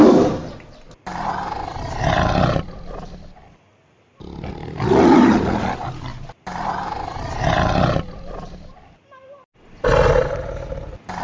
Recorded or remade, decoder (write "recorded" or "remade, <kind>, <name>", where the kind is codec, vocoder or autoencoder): recorded